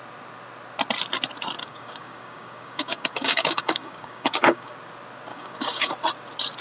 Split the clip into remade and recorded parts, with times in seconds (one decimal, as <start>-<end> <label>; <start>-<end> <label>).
0.0-1.6 recorded; 1.6-4.7 remade; 4.7-5.3 recorded; 5.3-5.9 remade; 5.9-6.6 recorded